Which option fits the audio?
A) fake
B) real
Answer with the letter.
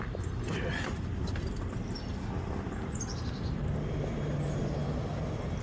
B